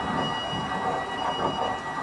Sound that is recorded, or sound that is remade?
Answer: recorded